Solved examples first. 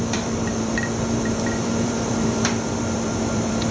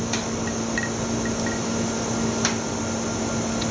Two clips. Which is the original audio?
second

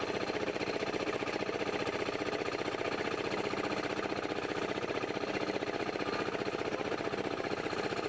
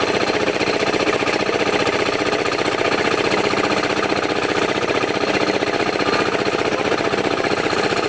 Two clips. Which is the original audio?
first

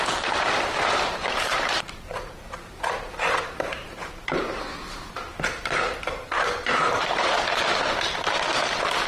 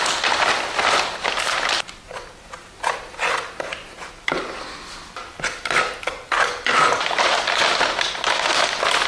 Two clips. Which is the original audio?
second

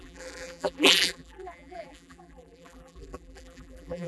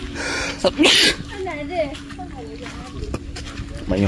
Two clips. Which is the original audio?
second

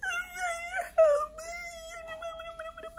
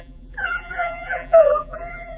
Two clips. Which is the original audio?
first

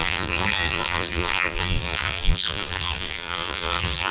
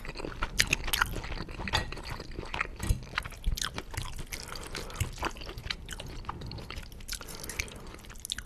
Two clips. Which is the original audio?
second